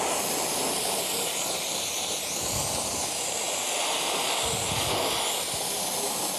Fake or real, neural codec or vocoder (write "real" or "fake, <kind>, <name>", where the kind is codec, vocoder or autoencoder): real